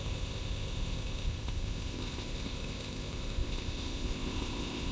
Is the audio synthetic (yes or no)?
yes